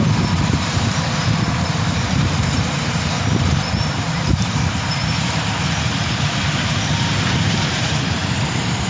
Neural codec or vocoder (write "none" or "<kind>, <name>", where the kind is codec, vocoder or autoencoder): vocoder, BigVGAN v2